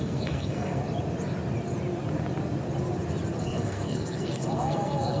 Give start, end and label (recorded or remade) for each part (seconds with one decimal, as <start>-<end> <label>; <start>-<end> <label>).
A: 0.0-0.8 remade; 0.8-3.4 recorded; 3.4-5.2 remade